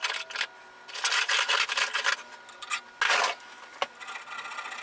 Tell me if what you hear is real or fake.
real